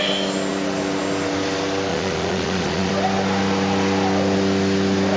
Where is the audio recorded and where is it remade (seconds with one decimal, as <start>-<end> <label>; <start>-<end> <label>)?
0.0-1.9 recorded; 1.9-2.9 remade; 2.9-5.2 recorded